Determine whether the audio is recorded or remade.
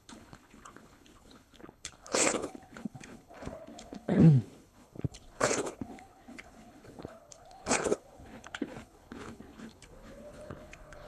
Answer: remade